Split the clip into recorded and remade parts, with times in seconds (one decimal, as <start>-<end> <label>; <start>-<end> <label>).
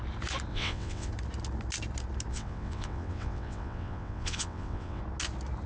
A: 0.0-0.5 recorded; 0.5-1.1 remade; 1.1-2.3 recorded; 2.3-5.0 remade; 5.0-5.7 recorded